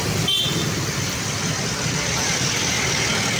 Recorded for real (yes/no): yes